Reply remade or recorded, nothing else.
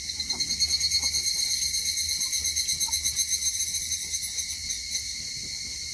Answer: recorded